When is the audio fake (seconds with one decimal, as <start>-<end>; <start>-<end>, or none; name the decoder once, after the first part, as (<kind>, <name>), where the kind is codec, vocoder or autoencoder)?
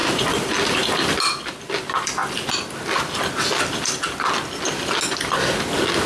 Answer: 0.0-1.1 (vocoder, BigVGAN v2)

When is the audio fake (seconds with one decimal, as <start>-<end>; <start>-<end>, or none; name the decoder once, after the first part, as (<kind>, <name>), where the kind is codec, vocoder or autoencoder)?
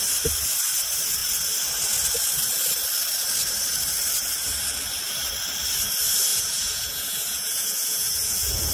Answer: 6.3-8.7 (vocoder, Vocos)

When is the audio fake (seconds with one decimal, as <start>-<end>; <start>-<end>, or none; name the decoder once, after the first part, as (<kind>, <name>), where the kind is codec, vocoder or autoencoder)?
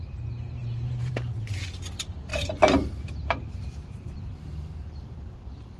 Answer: 0.6-1.4 (vocoder, BigVGAN v2); 2.3-5.8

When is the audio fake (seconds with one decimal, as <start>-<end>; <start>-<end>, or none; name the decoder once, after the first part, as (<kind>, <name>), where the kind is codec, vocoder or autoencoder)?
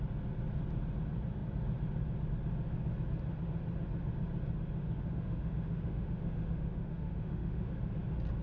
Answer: 4.8-7.7 (autoencoder, DAC-VAE)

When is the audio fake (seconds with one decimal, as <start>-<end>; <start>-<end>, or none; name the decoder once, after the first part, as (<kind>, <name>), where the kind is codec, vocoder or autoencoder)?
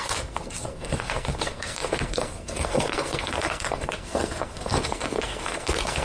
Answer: 0.0-6.0 (codec, SNAC)